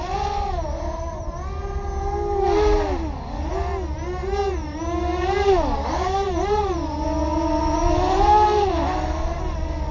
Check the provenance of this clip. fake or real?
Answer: real